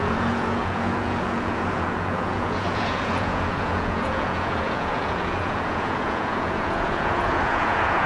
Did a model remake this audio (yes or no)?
yes